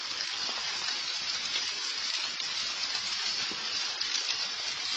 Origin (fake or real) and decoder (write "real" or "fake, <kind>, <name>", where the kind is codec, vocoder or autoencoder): real